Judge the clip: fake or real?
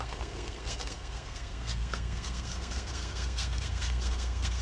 fake